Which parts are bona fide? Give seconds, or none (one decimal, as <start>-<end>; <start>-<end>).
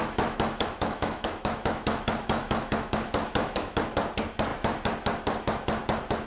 3.8-6.3